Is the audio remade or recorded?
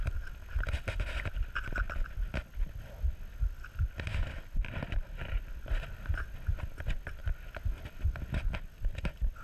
recorded